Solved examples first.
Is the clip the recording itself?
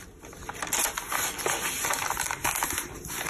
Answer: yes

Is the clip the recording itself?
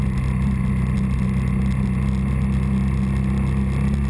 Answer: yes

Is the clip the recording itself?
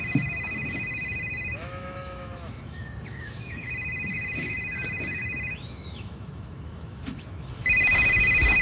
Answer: no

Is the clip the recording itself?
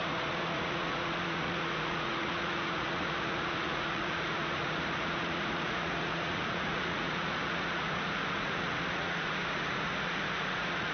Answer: no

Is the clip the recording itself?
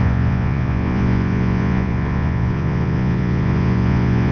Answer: no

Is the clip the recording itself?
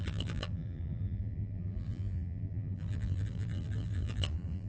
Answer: no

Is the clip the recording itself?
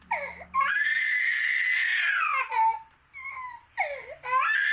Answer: yes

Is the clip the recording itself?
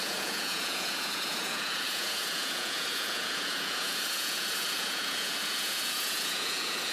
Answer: no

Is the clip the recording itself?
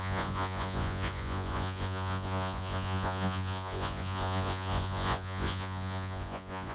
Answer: no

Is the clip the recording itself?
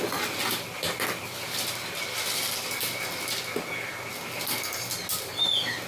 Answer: yes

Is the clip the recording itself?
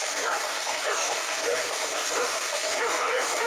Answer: no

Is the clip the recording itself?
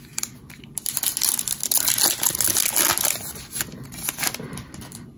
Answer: yes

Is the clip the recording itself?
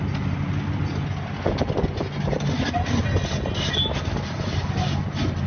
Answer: yes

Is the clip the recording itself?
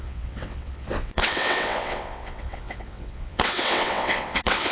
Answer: no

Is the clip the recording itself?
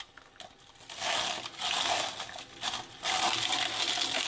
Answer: yes